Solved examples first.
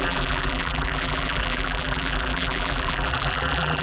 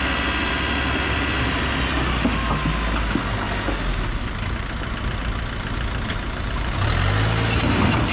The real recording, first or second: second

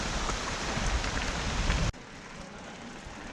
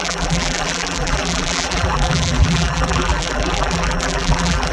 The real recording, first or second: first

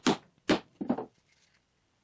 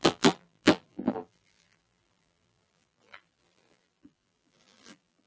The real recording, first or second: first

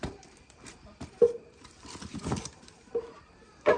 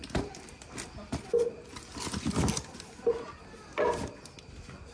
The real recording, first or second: second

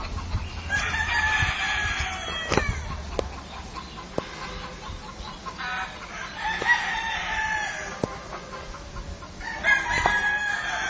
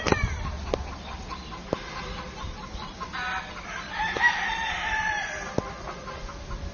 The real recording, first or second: first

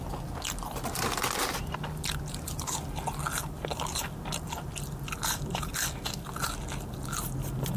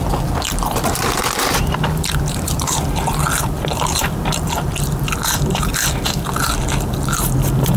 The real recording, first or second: first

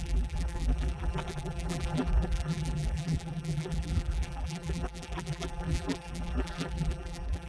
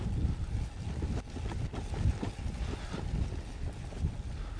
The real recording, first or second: second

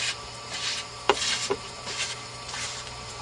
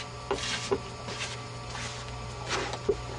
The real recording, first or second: second